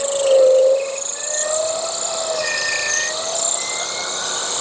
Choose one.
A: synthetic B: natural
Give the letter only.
B